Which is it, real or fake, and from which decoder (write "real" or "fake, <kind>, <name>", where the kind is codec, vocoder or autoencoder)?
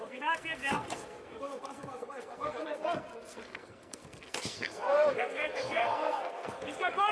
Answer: fake, codec, SNAC